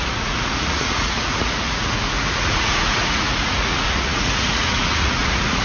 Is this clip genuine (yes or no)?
no